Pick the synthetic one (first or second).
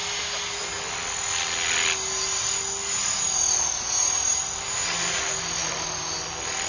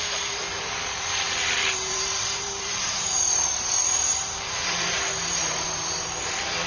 second